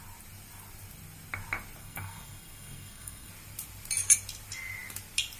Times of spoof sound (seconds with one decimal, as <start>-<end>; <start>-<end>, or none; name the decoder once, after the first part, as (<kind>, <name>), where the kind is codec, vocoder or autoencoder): 1.8-3.3 (codec, SNAC)